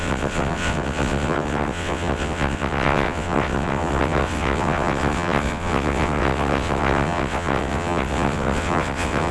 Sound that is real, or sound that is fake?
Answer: fake